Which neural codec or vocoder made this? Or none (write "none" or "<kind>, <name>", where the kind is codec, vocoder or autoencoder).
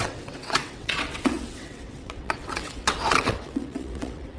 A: vocoder, WaveNeXt